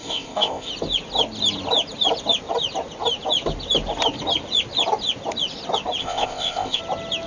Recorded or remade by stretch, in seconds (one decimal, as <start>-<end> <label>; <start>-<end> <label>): 0.0-0.7 remade; 0.7-6.0 recorded; 6.0-6.8 remade; 6.8-7.3 recorded